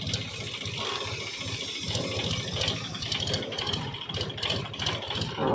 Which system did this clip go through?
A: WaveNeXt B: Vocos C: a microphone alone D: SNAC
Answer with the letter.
C